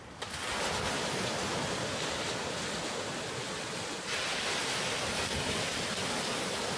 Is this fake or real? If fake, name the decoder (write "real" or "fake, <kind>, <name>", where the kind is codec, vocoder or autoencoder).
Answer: real